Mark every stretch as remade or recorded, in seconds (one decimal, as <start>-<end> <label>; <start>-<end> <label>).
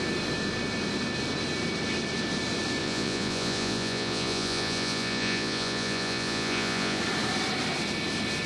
0.0-2.8 recorded; 2.8-7.0 remade; 7.0-8.5 recorded